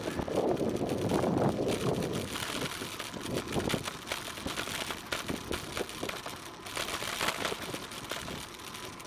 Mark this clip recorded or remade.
recorded